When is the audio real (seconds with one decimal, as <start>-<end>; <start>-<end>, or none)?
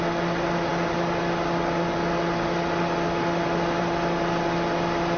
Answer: 0.0-5.2